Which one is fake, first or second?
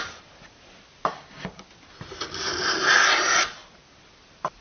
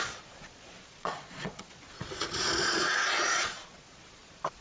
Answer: second